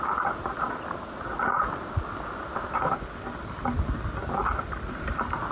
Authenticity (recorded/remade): recorded